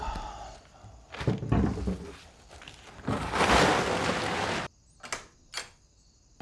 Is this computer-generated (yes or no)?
no